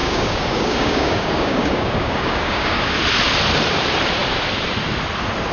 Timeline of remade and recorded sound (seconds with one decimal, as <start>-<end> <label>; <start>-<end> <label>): 0.0-2.9 remade; 2.9-5.5 recorded